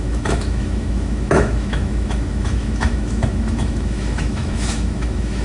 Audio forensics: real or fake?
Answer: fake